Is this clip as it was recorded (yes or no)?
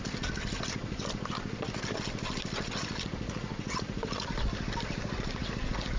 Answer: yes